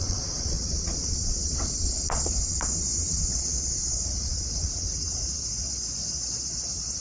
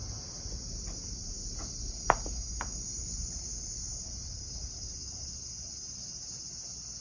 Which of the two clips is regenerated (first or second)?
first